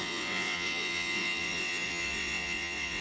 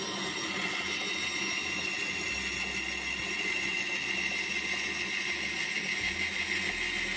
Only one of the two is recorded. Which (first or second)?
second